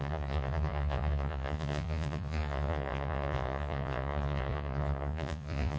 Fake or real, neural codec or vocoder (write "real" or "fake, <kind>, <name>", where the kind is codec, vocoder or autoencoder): fake, vocoder, Vocos